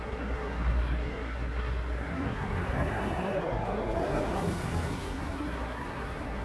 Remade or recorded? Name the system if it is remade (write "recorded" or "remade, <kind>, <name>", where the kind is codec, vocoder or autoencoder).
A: remade, codec, SNAC